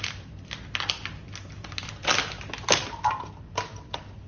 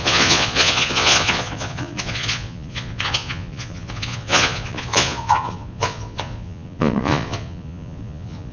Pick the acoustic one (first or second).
first